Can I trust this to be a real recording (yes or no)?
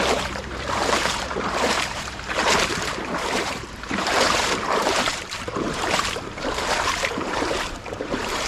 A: no